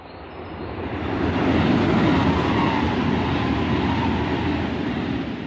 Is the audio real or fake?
real